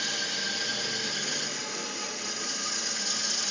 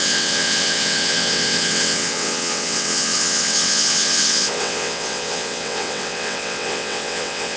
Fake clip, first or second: second